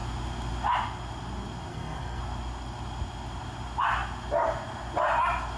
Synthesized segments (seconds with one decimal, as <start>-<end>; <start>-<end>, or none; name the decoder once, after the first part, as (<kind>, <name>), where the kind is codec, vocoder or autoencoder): 1.7-2.2 (codec, SNAC)